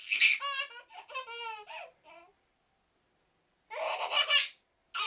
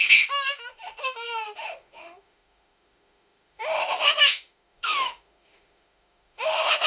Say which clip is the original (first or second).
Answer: first